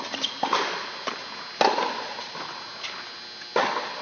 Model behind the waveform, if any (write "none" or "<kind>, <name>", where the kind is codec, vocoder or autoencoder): none